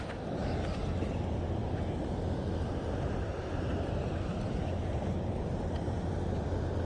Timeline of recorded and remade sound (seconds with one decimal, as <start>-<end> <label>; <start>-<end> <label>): 0.0-6.9 recorded